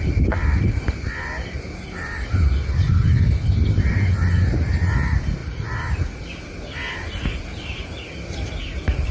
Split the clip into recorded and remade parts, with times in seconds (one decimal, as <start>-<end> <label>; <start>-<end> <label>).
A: 0.0-9.1 recorded

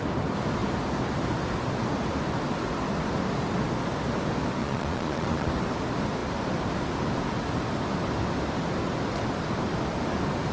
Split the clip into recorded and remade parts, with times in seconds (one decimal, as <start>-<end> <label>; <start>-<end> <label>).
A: 0.0-4.6 recorded; 4.6-5.5 remade; 5.5-10.5 recorded

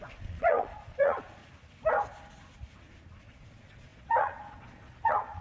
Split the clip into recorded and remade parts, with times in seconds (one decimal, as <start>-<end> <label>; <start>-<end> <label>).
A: 0.0-1.4 remade; 1.4-3.2 recorded; 3.2-5.4 remade

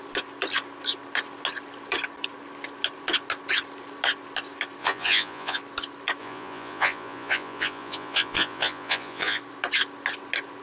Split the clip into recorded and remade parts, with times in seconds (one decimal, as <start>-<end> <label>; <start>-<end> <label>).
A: 0.0-4.8 recorded; 4.8-5.6 remade; 5.6-6.2 recorded; 6.2-9.4 remade; 9.4-10.6 recorded

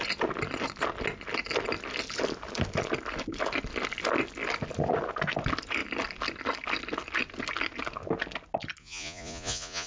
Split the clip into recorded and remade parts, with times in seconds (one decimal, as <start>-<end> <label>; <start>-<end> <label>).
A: 0.0-8.8 recorded; 8.8-9.9 remade